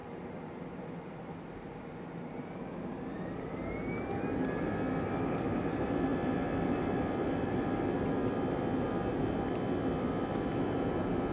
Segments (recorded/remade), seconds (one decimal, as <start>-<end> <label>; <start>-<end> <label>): 0.0-11.3 recorded